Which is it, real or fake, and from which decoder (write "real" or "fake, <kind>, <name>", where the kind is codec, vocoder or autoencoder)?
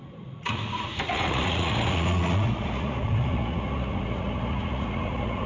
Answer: fake, vocoder, Vocos